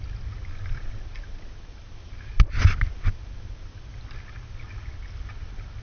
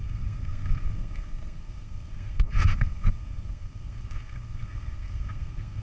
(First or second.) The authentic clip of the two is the first